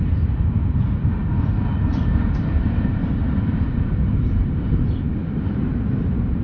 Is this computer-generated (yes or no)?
yes